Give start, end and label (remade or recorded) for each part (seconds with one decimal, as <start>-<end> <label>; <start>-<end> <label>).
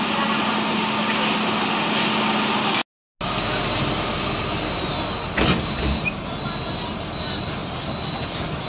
0.0-8.7 recorded